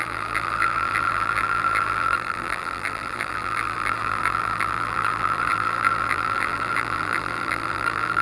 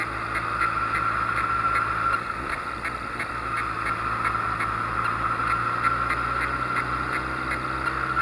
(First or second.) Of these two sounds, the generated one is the first